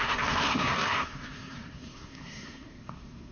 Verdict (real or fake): fake